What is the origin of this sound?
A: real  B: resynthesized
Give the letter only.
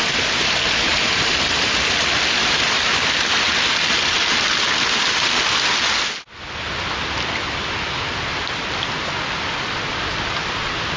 A